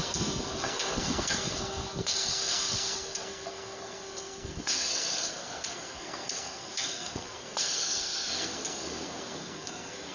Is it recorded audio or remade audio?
remade